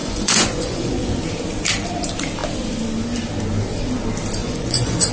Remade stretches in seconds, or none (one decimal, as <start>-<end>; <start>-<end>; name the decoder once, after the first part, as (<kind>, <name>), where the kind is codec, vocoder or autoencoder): 0.0-1.2 (vocoder, Vocos); 4.4-5.1